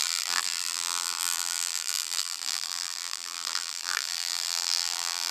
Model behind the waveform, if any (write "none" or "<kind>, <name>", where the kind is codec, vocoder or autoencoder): vocoder, BigVGAN v2